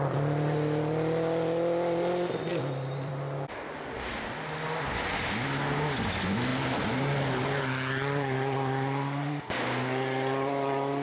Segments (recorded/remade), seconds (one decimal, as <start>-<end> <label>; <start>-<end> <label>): 0.0-2.5 recorded; 2.5-3.1 remade; 3.1-11.0 recorded